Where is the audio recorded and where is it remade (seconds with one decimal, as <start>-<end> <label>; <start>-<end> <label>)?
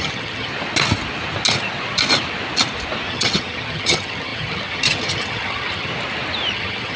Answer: 0.0-0.5 remade; 0.5-3.1 recorded; 3.1-5.9 remade; 5.9-6.5 recorded; 6.5-7.0 remade